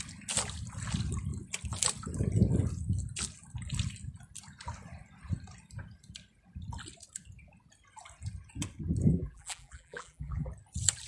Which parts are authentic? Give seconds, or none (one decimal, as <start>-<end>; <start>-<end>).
0.0-9.1; 10.5-11.1